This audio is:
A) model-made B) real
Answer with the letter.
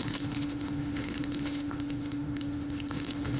A